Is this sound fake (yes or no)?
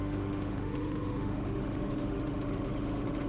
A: yes